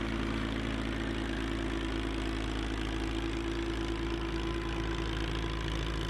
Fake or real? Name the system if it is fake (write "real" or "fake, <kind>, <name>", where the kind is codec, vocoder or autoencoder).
real